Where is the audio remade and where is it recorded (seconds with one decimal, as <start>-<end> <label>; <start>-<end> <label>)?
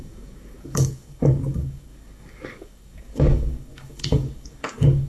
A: 0.0-5.1 remade